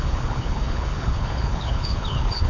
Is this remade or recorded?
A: remade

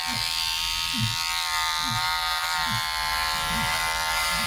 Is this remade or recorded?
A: recorded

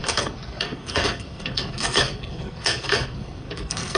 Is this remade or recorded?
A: remade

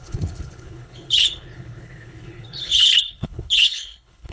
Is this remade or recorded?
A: remade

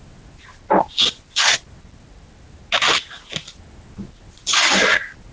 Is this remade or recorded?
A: recorded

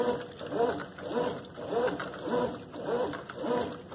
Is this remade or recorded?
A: recorded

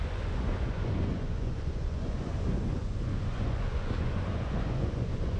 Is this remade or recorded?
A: remade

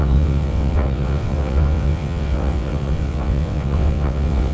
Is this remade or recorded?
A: remade